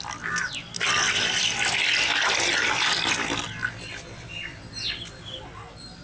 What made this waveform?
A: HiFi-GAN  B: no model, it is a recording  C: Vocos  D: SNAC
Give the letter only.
B